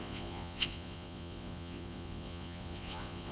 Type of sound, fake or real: fake